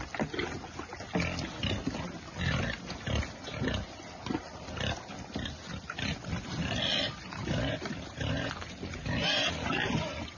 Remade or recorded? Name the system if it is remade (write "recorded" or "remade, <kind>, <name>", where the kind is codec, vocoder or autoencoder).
recorded